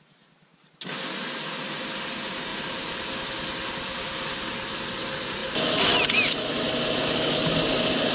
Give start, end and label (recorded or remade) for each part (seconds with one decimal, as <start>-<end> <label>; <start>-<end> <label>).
0.0-8.1 recorded